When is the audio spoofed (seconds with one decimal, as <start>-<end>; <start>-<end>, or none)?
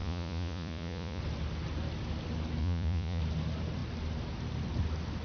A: 0.0-1.2; 2.6-3.2